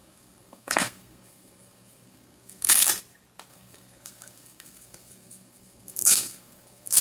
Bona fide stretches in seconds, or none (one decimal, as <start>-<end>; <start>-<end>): 2.9-3.5